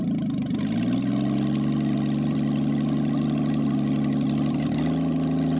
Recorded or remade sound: recorded